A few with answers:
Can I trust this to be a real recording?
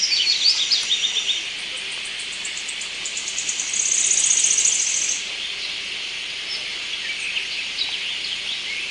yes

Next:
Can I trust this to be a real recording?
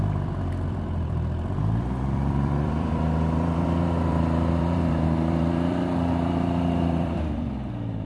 no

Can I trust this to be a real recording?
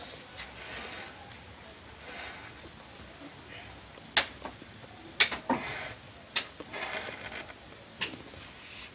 yes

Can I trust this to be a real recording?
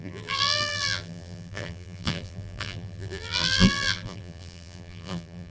no